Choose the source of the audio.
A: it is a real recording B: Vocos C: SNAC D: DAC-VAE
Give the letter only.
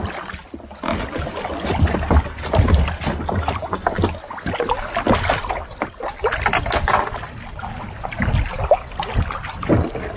A